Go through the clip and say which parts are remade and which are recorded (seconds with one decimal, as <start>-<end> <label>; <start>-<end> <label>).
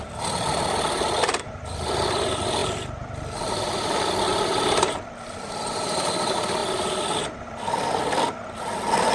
0.0-9.1 recorded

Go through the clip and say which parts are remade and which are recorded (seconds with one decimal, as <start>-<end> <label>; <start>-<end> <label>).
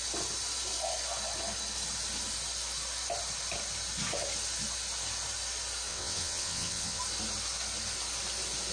0.0-5.9 recorded; 5.9-7.0 remade; 7.0-8.7 recorded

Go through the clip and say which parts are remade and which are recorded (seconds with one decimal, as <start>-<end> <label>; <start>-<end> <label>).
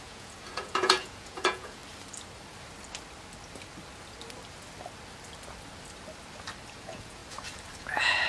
0.0-1.8 remade; 1.8-6.7 recorded; 6.7-7.2 remade; 7.2-7.8 recorded; 7.8-8.3 remade